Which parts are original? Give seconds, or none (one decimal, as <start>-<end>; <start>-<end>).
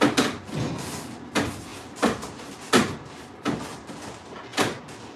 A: 0.0-1.7; 3.9-5.2